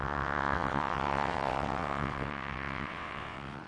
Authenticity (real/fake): fake